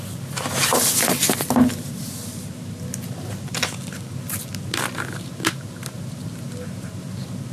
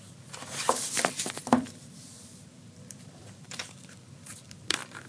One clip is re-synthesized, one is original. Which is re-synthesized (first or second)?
second